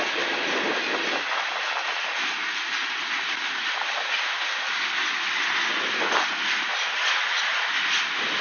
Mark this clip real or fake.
real